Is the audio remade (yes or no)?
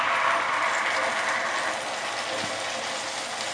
no